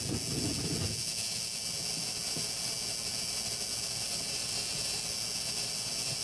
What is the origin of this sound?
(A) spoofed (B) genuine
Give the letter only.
B